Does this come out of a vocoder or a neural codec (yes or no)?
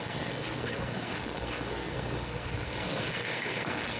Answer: yes